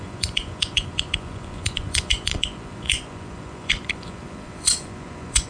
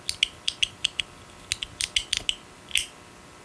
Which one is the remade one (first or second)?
first